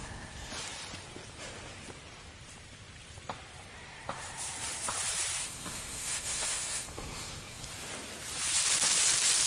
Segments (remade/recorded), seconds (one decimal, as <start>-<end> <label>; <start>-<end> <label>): 0.0-0.5 remade; 0.5-5.4 recorded; 5.4-7.7 remade; 7.7-9.5 recorded